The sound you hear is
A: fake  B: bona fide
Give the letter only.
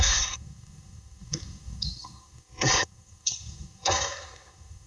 A